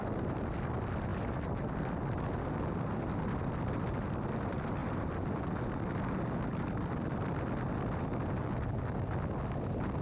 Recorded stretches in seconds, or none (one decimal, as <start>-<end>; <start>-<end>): 0.0-10.0